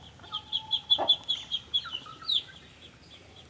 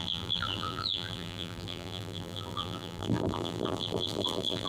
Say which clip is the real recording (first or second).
first